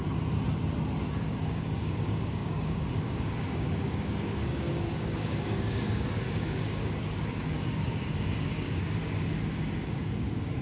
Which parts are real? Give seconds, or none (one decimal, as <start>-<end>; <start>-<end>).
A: 0.0-1.1